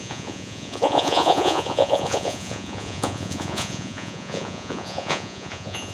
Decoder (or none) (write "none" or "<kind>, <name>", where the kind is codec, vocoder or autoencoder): vocoder, Vocos